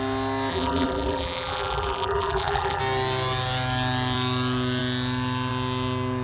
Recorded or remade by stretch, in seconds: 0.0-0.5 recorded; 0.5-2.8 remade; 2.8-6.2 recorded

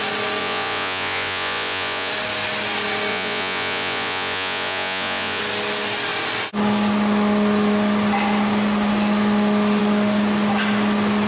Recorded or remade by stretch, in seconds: 0.0-0.4 recorded; 0.4-2.1 remade; 2.1-3.1 recorded; 3.1-5.4 remade; 5.4-11.3 recorded